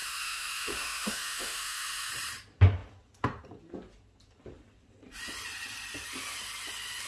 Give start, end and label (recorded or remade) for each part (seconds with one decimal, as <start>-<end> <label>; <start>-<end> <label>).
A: 0.0-2.1 remade; 2.1-7.1 recorded